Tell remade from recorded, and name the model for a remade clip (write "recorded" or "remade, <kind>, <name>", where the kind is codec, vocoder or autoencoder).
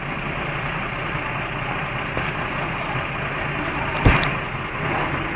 recorded